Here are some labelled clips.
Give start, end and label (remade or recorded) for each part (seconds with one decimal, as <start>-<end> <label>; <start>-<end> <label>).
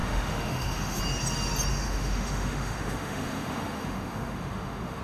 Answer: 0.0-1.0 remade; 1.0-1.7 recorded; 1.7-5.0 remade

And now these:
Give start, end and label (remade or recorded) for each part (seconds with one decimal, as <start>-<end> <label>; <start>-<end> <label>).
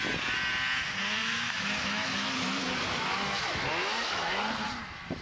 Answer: 0.0-1.2 recorded; 1.2-4.3 remade; 4.3-5.2 recorded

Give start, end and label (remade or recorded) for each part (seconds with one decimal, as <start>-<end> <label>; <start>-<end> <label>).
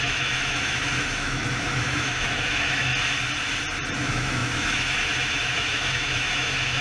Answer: 0.0-2.9 remade; 2.9-3.9 recorded; 3.9-6.8 remade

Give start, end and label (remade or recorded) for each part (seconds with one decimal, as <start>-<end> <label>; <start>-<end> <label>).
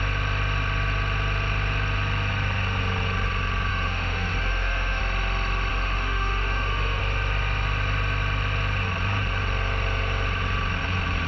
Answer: 0.0-3.7 recorded; 3.7-5.0 remade; 5.0-5.7 recorded; 5.7-7.0 remade; 7.0-11.3 recorded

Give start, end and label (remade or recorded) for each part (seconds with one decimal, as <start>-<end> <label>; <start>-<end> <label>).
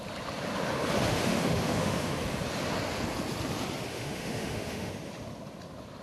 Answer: 0.0-1.1 recorded; 1.1-2.2 remade; 2.2-3.9 recorded; 3.9-4.9 remade; 4.9-6.0 recorded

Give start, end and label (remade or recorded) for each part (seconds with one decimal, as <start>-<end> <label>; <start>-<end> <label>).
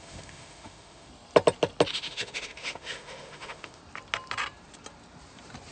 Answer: 0.0-1.1 remade; 1.1-1.9 recorded; 1.9-3.8 remade; 3.8-5.7 recorded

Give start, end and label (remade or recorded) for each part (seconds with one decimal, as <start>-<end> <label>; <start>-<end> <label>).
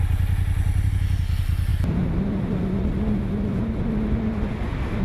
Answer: 0.0-5.0 recorded